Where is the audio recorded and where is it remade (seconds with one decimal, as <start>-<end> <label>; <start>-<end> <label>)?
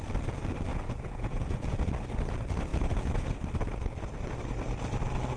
0.0-0.7 recorded; 0.7-1.9 remade; 1.9-2.7 recorded; 2.7-3.4 remade; 3.4-5.4 recorded